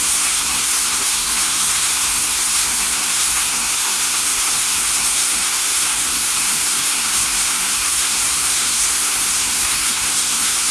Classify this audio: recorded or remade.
remade